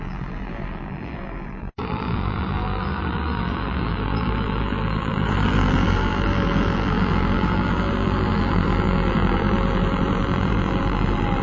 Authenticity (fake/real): fake